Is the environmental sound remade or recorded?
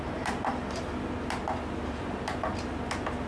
recorded